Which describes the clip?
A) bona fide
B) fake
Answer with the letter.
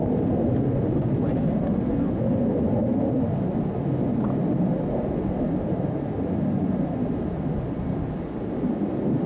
A